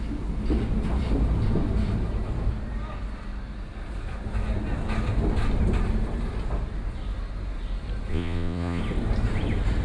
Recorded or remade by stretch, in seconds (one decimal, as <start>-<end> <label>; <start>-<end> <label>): 0.0-8.1 recorded; 8.1-8.8 remade; 8.8-9.8 recorded